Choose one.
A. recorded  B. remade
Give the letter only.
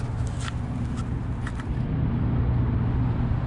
A